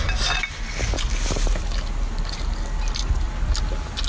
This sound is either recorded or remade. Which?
recorded